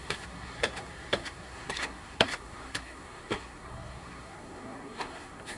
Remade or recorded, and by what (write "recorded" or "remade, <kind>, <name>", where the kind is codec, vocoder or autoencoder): remade, codec, SNAC